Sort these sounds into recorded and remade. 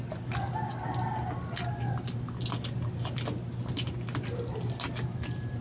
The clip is recorded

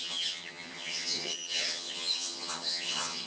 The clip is remade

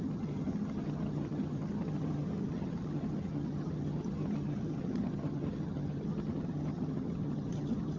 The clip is remade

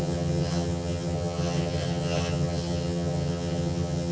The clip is remade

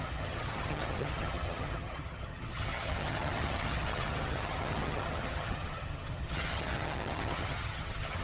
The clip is remade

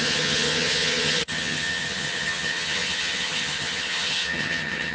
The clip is remade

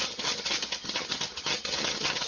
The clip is remade